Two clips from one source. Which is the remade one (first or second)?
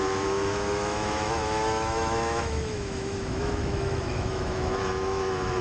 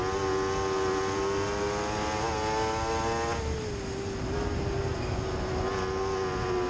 first